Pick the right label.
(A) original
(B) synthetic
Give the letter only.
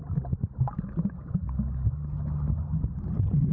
A